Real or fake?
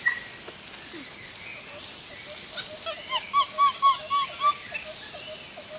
real